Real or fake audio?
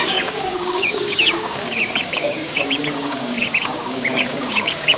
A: fake